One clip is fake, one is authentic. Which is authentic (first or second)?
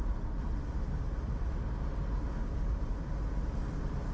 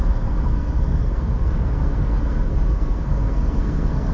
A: first